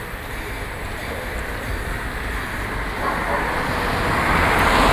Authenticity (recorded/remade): recorded